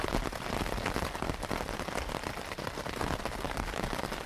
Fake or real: real